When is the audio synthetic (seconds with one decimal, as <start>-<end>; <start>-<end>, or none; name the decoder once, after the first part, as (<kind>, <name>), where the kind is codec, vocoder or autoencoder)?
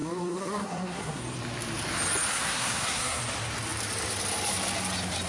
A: 0.0-1.2 (codec, SNAC); 2.3-3.2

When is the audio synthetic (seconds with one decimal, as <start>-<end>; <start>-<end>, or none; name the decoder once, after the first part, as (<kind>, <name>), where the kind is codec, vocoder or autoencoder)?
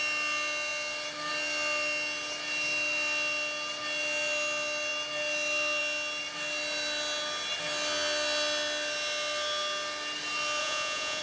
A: 10.6-11.2 (vocoder, Vocos)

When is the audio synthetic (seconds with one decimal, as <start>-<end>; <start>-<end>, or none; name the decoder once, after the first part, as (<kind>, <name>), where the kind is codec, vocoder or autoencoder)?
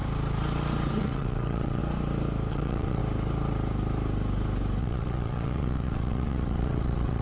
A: 1.0-1.8 (vocoder, WaveNeXt); 2.5-3.0; 4.8-7.2